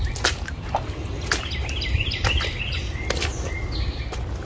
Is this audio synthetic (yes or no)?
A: no